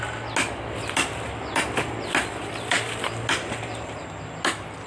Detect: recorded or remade recorded